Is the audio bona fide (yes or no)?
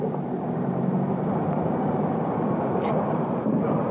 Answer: no